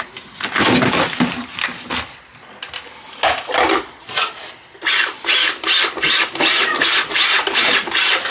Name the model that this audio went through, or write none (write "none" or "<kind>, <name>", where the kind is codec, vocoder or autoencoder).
none